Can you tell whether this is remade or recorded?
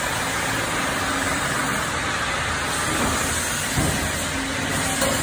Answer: recorded